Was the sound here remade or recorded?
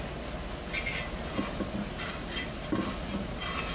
recorded